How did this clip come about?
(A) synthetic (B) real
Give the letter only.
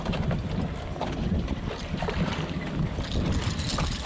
B